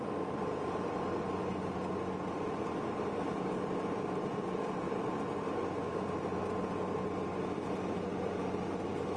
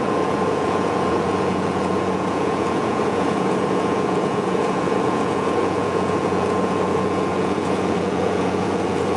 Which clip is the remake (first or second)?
second